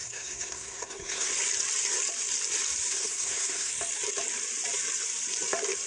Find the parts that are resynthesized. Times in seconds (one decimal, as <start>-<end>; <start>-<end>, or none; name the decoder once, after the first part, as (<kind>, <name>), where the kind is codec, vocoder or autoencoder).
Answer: 0.0-1.3 (codec, SNAC); 2.9-3.7

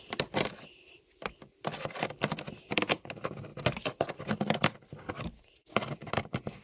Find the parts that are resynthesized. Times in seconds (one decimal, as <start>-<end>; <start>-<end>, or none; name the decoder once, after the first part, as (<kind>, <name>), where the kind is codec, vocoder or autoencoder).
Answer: none

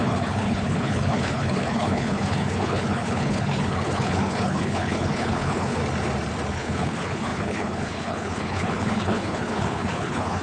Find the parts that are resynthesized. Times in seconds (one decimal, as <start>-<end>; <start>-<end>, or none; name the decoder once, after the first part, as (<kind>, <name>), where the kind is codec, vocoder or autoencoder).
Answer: 0.0-5.8 (codec, HILCodec); 6.5-10.4

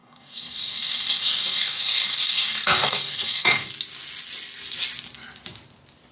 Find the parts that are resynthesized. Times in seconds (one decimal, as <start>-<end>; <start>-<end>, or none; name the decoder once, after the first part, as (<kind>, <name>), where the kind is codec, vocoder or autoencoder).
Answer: 0.0-3.7 (codec, DAC)

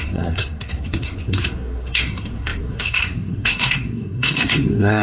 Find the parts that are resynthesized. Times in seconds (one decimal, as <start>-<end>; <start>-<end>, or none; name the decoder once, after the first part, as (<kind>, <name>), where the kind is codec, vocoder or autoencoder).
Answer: 0.0-5.0 (codec, SNAC)

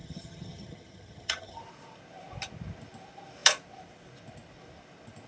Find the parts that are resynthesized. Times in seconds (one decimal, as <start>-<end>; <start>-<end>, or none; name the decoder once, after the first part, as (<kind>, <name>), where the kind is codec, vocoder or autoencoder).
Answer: 0.0-1.6 (vocoder, HiFi-GAN)

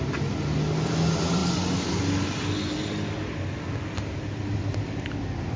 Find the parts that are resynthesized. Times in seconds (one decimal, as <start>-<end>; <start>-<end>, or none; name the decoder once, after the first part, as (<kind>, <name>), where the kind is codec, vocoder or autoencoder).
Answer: none

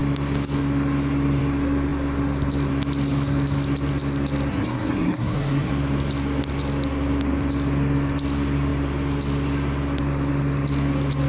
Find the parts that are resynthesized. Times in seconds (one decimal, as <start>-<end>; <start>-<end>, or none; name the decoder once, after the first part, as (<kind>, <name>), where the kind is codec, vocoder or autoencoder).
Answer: 4.5-5.7 (codec, SNAC)